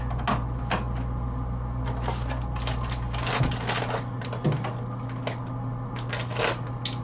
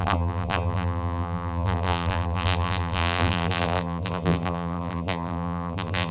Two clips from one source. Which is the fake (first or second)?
second